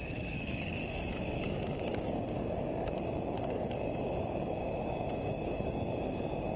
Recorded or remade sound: remade